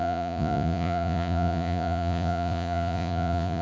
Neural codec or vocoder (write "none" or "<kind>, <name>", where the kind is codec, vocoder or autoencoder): vocoder, Vocos